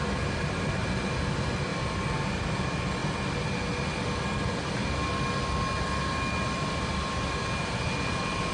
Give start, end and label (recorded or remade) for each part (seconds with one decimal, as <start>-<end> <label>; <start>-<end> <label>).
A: 0.0-8.5 recorded